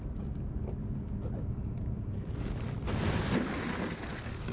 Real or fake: real